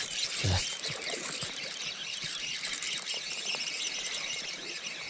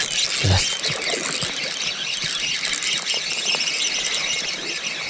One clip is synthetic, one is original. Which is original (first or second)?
second